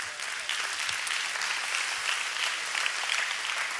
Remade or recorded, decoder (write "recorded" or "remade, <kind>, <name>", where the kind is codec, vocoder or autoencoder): recorded